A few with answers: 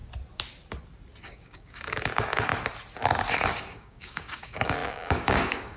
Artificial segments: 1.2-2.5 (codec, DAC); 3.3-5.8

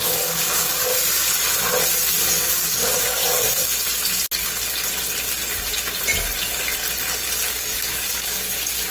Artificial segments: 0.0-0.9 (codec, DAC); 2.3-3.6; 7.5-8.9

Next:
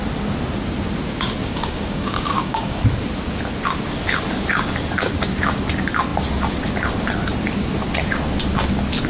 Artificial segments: 1.4-2.8 (codec, DAC)